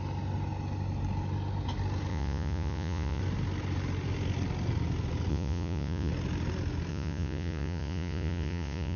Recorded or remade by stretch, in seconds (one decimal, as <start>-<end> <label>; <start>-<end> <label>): 0.0-2.1 recorded; 2.1-3.2 remade; 3.2-5.3 recorded; 5.3-6.1 remade; 6.1-6.9 recorded; 6.9-9.0 remade